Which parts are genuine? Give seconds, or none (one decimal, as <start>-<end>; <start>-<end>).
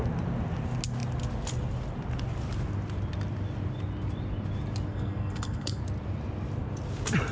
0.0-4.9; 5.8-7.3